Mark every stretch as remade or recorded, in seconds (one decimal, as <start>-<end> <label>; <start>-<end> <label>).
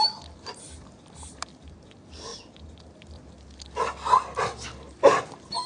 0.0-5.7 recorded